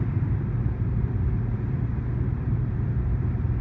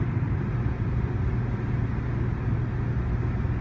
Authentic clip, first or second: second